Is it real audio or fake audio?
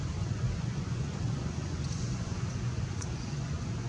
fake